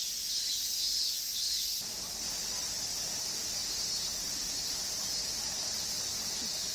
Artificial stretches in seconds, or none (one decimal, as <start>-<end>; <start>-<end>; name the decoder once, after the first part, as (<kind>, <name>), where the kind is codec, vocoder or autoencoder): none